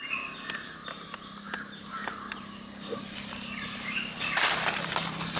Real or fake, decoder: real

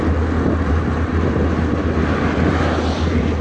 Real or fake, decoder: real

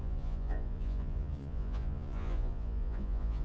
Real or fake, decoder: fake, vocoder, Vocos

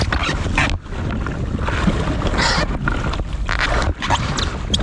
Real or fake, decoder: real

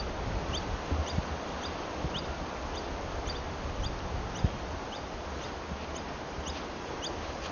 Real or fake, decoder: real